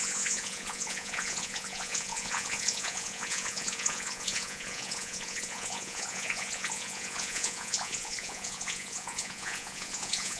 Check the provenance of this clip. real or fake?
fake